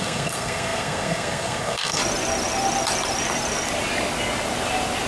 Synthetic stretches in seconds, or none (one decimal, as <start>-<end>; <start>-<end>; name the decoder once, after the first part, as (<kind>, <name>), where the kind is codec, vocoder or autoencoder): 0.0-2.0 (codec, SNAC)